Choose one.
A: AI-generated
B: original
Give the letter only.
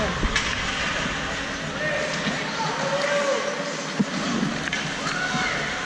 B